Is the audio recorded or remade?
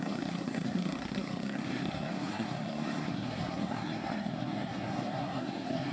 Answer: remade